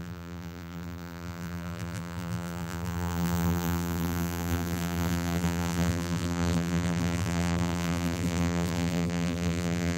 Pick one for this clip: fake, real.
fake